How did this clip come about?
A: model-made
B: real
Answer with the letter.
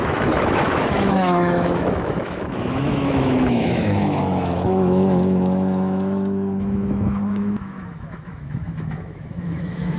A